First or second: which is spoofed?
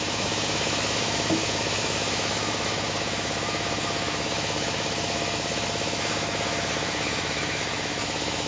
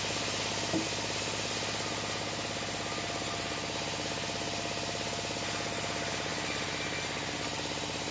first